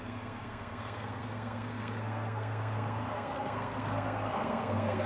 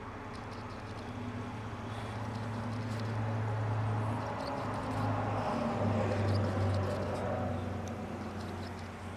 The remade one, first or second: first